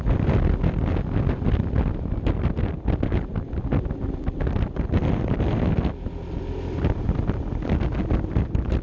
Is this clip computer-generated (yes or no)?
no